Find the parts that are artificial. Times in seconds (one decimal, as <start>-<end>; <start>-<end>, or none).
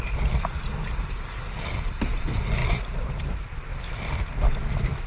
2.6-3.2